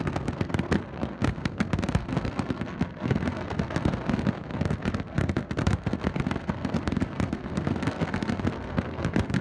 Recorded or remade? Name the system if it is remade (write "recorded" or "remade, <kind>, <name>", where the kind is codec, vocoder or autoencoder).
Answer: remade, codec, SNAC